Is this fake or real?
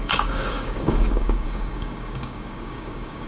fake